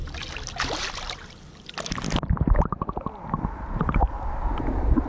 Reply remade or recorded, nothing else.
recorded